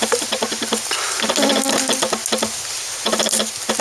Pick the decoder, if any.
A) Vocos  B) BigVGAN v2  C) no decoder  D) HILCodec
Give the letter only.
C